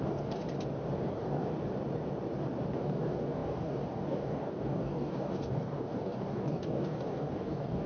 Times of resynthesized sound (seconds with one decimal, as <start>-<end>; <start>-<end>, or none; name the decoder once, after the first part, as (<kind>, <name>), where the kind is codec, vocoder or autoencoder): 0.0-0.4 (codec, DAC); 1.1-1.5; 2.7-7.9